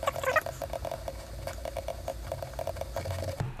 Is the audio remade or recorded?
recorded